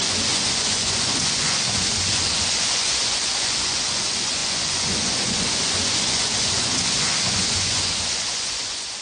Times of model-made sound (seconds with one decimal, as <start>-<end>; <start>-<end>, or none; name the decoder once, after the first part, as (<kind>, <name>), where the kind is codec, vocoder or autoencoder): 0.0-9.0 (vocoder, Vocos)